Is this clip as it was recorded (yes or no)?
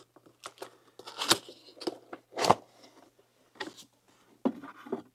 yes